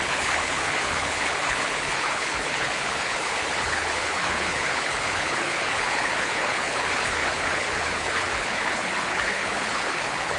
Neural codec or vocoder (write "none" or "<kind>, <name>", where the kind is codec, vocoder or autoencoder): codec, HILCodec